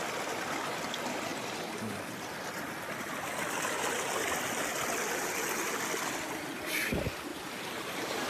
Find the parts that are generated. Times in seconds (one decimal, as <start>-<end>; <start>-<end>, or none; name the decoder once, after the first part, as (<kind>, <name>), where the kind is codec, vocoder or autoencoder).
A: 5.1-5.7 (vocoder, BigVGAN v2); 7.3-8.3